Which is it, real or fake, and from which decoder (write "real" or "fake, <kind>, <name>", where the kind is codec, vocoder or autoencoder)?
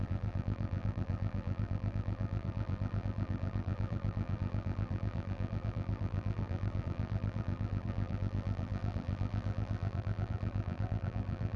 fake, vocoder, BigVGAN v2